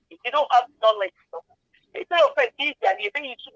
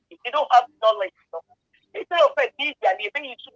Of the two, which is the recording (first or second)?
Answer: second